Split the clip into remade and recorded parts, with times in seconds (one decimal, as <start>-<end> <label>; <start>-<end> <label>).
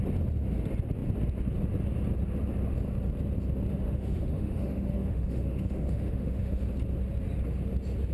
0.0-3.7 recorded; 3.7-6.6 remade; 6.6-8.1 recorded